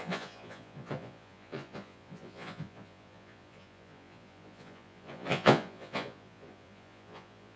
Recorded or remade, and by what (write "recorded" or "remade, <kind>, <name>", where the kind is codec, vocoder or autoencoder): remade, vocoder, Vocos